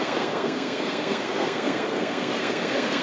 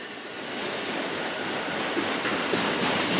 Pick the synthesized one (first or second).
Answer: first